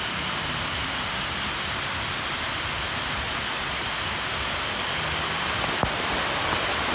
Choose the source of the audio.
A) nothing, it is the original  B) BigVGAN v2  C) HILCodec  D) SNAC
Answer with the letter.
A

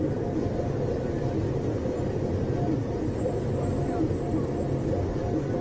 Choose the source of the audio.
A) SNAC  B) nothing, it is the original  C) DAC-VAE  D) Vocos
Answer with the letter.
B